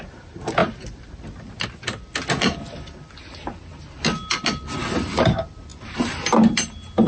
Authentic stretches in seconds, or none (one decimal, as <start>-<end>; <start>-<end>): 0.0-7.1